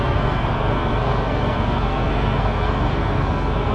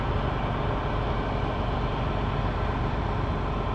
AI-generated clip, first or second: first